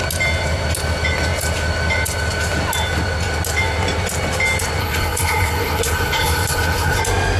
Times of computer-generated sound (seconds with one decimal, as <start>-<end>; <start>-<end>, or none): 4.8-7.0

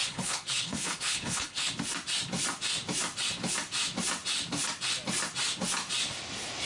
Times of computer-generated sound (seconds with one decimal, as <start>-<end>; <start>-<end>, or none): 0.0-1.7

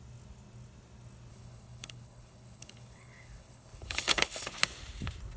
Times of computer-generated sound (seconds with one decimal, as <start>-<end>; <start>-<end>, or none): 1.3-4.5

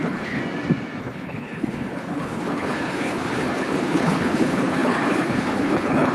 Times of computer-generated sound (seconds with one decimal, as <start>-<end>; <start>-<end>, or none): 0.0-0.4; 1.0-6.1

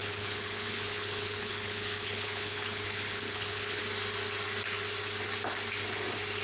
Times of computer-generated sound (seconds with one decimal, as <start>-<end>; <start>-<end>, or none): 0.0-3.8